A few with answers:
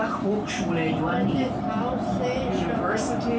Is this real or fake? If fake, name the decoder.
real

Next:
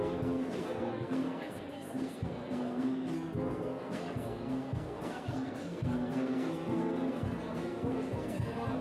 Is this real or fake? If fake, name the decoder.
fake, codec, SNAC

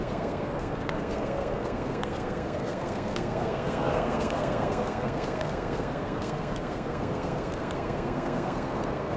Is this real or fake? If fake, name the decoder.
fake, codec, SNAC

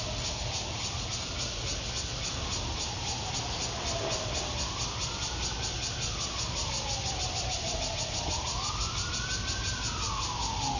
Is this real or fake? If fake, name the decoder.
real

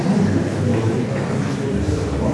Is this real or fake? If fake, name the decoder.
real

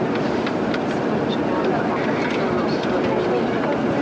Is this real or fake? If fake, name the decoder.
real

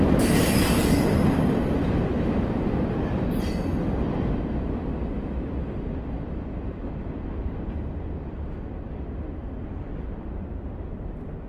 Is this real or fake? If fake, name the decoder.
real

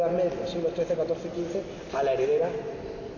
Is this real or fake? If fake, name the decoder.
real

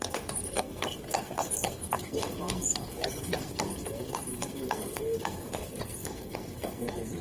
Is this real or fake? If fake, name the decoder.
fake, codec, SNAC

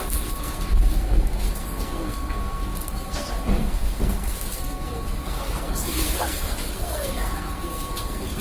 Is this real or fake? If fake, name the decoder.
fake, codec, SNAC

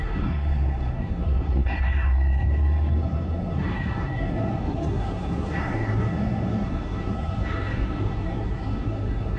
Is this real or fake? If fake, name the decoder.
fake, codec, SNAC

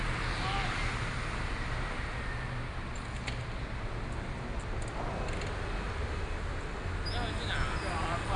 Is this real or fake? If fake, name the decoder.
real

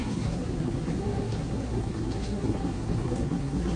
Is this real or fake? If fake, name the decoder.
fake, codec, SNAC